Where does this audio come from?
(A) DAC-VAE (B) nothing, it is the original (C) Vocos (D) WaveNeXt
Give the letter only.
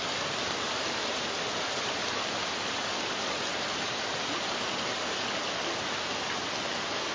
B